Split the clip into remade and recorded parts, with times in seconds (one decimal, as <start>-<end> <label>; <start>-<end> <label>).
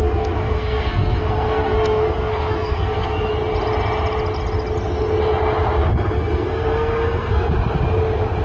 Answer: 0.0-3.3 remade; 3.3-5.8 recorded; 5.8-7.5 remade; 7.5-8.4 recorded